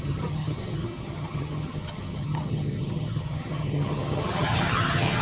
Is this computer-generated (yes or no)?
yes